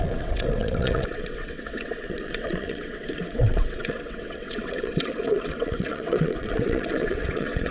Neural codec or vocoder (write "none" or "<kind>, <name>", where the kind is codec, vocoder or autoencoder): vocoder, WaveNeXt